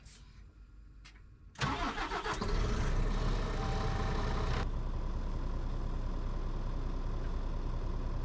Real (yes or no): yes